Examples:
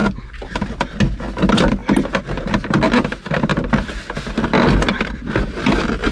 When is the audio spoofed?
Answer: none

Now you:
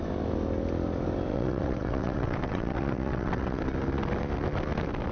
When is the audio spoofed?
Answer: 1.3-3.6 (vocoder, WaveNeXt)

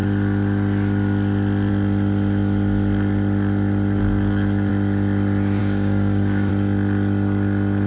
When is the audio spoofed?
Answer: 5.6-6.5 (codec, DAC)

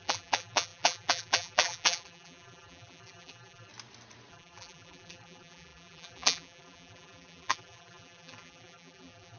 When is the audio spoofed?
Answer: 0.0-3.7 (vocoder, BigVGAN v2); 4.3-9.4

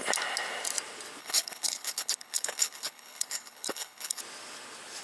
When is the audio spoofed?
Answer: 1.2-4.2 (codec, HILCodec)

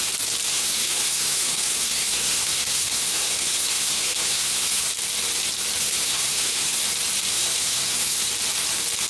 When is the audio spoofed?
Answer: 0.5-4.9 (codec, SNAC); 5.8-6.8; 7.3-8.3

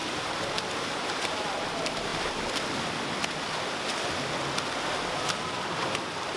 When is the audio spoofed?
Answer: 0.8-2.1 (vocoder, BigVGAN v2); 5.7-6.4